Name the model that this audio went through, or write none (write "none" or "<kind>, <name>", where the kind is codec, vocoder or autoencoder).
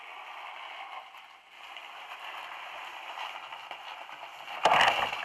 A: none